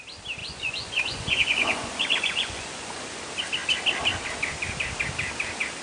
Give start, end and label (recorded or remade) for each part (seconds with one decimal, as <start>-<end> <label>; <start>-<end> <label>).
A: 0.0-0.4 recorded; 0.4-3.2 remade; 3.2-5.8 recorded